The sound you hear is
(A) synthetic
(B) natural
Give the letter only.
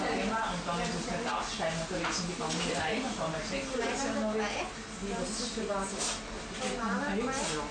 B